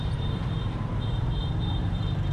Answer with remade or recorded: remade